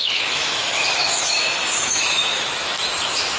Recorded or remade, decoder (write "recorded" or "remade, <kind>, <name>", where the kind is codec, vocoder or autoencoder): remade, autoencoder, DAC-VAE